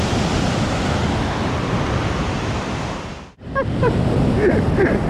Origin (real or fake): fake